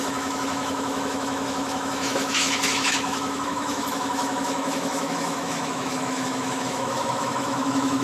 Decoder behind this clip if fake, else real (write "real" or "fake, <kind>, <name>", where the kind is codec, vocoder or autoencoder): fake, autoencoder, DAC-VAE